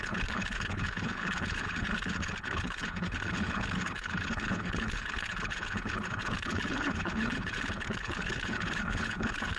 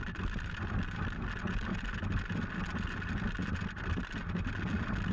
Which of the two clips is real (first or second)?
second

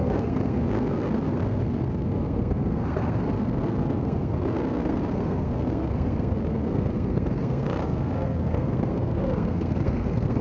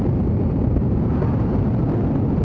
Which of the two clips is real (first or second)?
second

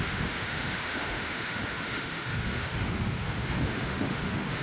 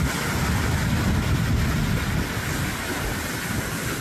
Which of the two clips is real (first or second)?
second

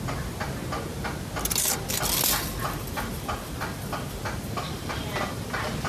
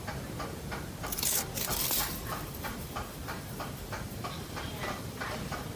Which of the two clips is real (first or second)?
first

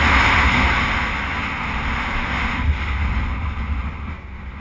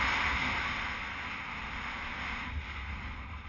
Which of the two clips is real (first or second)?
first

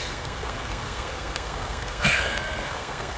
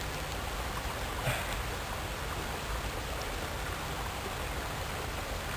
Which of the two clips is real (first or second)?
second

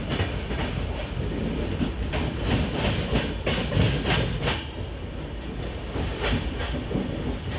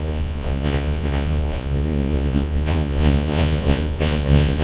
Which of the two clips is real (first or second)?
first